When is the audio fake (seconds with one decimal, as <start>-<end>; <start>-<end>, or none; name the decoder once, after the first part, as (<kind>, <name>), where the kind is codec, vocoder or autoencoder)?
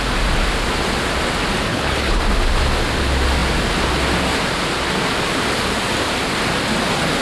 1.7-2.2 (codec, HILCodec)